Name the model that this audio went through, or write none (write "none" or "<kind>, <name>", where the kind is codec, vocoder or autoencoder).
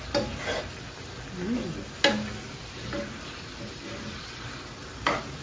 none